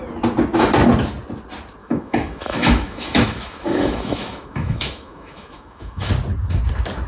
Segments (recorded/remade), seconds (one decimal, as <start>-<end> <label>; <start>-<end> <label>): 0.0-1.8 recorded; 1.8-6.1 remade; 6.1-7.1 recorded